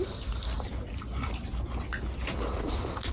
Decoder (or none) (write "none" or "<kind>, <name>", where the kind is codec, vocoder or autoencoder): none